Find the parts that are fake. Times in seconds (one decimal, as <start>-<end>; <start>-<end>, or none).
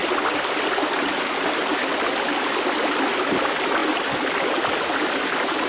none